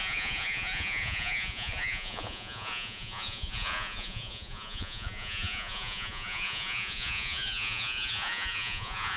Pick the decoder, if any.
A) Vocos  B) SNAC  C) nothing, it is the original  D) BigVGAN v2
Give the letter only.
A